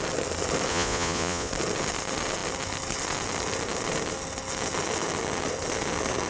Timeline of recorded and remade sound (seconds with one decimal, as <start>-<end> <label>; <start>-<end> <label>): 0.0-0.7 recorded; 0.7-1.5 remade; 1.5-6.3 recorded